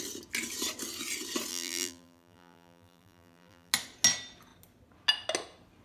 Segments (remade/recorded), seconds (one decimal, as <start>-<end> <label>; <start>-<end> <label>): 0.0-1.5 recorded; 1.5-3.7 remade; 3.7-5.8 recorded